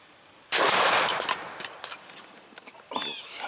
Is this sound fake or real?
real